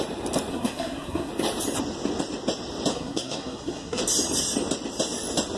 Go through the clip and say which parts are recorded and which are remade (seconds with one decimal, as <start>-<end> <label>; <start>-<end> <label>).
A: 0.0-0.5 recorded; 0.5-1.3 remade; 1.3-2.9 recorded; 2.9-4.0 remade; 4.0-5.6 recorded